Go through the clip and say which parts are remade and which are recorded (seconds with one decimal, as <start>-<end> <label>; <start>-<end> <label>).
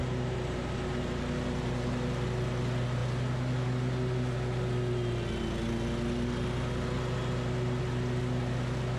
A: 0.0-0.8 remade; 0.8-9.0 recorded